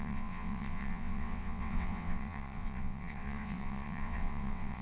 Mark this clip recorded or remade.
remade